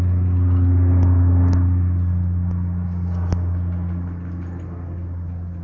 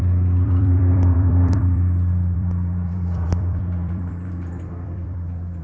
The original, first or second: first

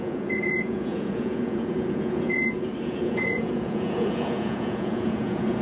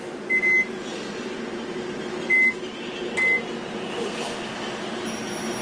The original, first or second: second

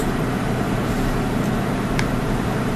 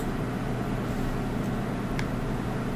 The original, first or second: second